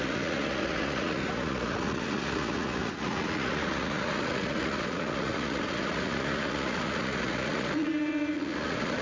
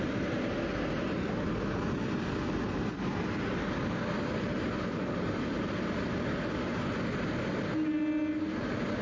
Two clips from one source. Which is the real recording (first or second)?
second